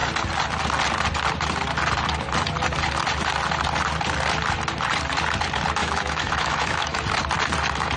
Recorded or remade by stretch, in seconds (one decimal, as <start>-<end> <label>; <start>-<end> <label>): 0.0-5.8 recorded; 5.8-7.0 remade; 7.0-8.0 recorded